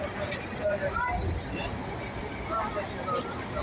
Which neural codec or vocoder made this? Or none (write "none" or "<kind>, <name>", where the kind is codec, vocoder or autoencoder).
none